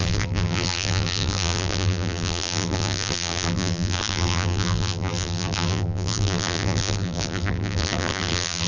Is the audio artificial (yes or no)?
yes